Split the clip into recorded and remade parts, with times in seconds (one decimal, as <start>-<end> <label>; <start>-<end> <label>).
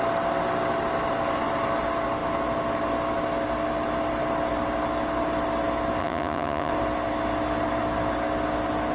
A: 0.0-6.0 recorded; 6.0-6.7 remade; 6.7-8.9 recorded